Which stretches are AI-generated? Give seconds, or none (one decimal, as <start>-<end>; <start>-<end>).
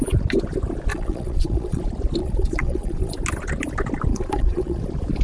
0.9-1.8; 2.2-3.1; 4.1-4.8